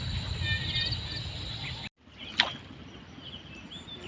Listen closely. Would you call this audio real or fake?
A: real